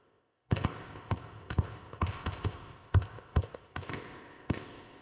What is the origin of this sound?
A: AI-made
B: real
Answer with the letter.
A